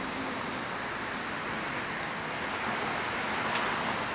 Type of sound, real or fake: real